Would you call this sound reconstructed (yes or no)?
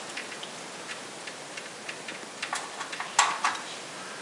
no